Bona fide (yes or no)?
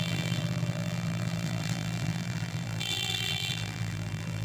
no